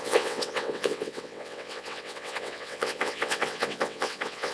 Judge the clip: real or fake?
fake